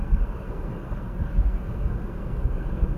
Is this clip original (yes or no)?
no